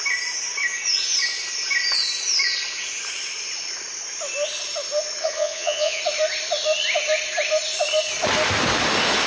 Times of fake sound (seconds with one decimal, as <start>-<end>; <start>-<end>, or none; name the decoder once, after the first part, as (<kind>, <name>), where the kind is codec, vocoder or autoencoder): 5.2-6.0 (vocoder, Vocos)